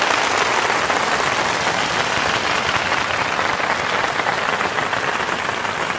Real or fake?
real